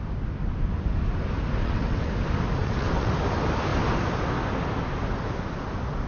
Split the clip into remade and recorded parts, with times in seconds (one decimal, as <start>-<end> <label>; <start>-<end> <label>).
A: 0.0-1.6 recorded; 1.6-2.1 remade; 2.1-2.6 recorded; 2.6-3.1 remade; 3.1-6.1 recorded